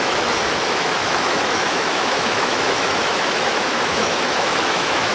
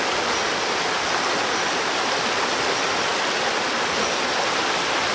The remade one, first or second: first